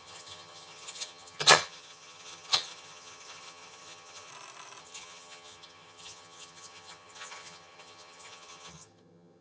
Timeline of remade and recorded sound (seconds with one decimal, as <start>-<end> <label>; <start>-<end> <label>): 0.0-4.3 remade; 4.3-4.8 recorded; 4.8-9.4 remade